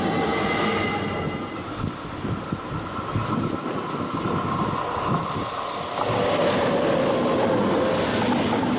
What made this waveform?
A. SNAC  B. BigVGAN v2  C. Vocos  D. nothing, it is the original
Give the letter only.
D